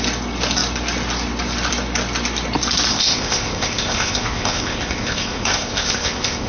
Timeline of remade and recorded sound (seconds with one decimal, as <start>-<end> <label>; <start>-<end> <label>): 0.0-2.9 recorded; 2.9-6.5 remade